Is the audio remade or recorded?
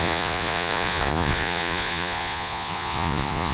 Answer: remade